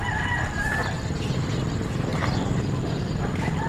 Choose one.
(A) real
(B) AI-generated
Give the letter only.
B